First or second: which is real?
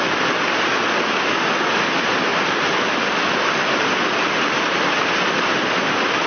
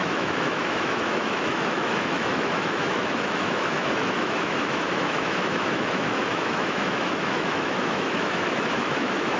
first